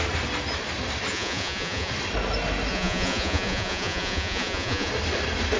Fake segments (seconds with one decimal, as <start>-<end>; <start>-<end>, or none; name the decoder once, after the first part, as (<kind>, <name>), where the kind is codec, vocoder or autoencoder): 1.1-1.9 (vocoder, Vocos); 2.7-4.9